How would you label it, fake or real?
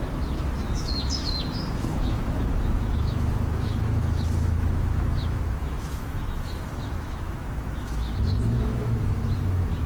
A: fake